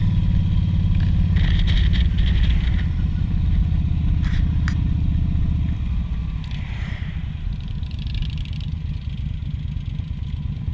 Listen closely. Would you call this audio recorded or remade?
recorded